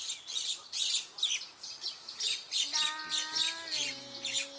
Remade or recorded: recorded